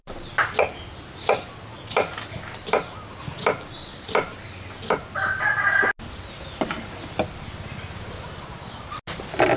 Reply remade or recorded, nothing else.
recorded